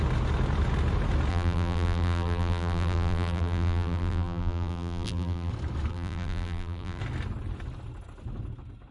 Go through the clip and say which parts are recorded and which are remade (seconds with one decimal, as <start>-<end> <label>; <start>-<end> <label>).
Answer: 0.0-1.3 recorded; 1.3-5.5 remade; 5.5-5.9 recorded; 5.9-7.0 remade; 7.0-8.9 recorded